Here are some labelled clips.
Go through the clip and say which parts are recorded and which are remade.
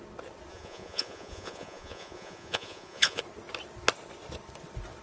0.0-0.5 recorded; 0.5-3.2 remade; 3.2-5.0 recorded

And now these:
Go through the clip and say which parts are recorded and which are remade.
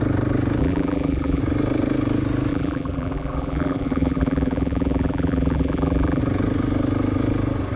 0.0-0.6 recorded; 0.6-1.4 remade; 1.4-2.5 recorded; 2.5-6.2 remade; 6.2-7.8 recorded